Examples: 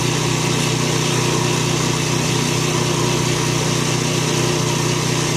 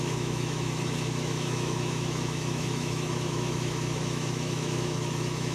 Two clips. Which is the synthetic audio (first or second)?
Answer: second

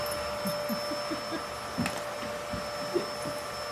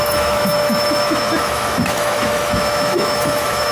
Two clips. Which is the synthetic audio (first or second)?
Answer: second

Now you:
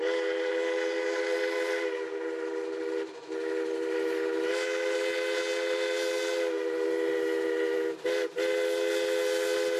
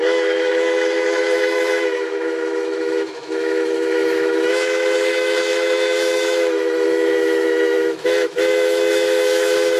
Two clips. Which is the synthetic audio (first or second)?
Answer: second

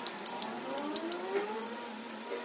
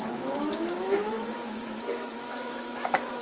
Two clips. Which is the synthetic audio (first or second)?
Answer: second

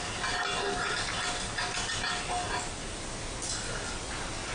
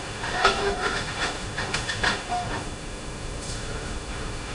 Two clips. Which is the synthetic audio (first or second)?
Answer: second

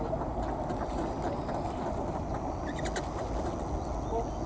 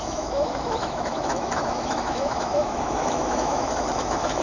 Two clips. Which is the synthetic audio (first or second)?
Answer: second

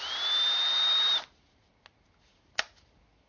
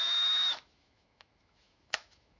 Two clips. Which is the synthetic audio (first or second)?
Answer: second